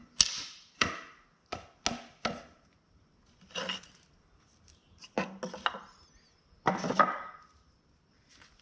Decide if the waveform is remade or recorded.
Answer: recorded